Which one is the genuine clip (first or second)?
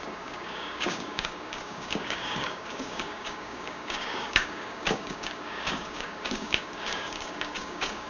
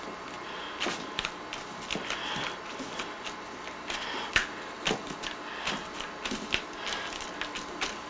second